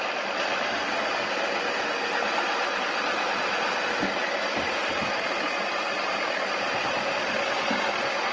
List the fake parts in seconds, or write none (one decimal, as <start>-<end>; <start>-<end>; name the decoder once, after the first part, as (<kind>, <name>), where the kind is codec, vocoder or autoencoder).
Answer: 0.0-5.0 (vocoder, BigVGAN v2); 5.6-8.3